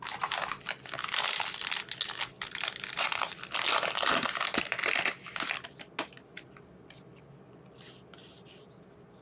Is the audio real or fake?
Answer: real